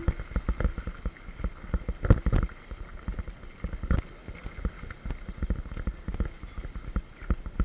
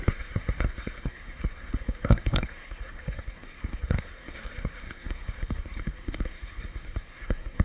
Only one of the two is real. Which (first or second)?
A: first